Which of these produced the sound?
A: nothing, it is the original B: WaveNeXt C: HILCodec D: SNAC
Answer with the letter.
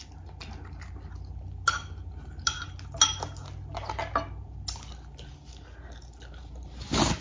A